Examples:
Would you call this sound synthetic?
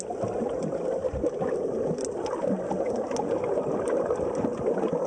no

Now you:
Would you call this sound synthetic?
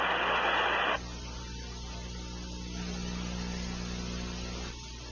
no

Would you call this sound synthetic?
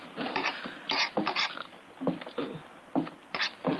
no